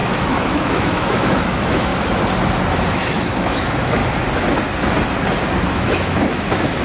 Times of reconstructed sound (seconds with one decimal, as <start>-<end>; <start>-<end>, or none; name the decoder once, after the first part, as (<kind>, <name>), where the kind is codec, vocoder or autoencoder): 0.0-1.9 (autoencoder, DAC-VAE); 2.9-4.0; 5.7-6.8